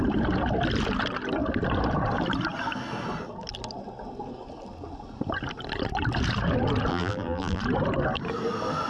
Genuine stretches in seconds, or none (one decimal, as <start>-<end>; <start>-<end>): 0.0-6.9; 7.6-8.9